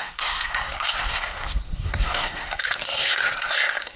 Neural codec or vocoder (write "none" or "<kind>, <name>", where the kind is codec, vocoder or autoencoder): codec, SNAC